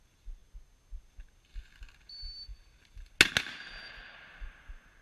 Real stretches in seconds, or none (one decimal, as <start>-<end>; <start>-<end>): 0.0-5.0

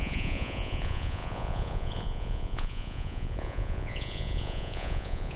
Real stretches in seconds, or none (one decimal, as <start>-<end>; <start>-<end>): none

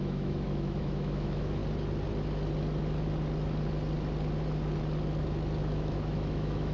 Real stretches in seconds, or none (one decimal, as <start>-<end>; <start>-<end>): 1.6-5.6

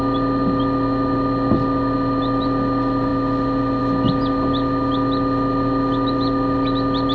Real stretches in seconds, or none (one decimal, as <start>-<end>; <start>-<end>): 0.0-7.1

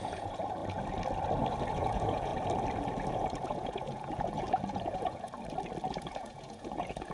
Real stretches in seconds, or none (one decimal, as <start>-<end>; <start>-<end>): 0.6-1.7; 2.3-3.1; 5.3-5.9

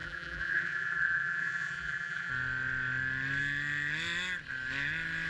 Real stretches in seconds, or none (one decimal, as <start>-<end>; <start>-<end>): 2.3-5.3

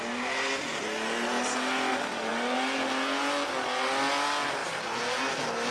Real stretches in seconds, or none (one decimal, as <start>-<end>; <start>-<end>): 0.0-5.7